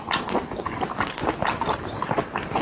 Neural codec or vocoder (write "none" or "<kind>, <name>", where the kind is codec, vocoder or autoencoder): none